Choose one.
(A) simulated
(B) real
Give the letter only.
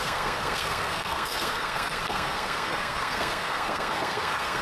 A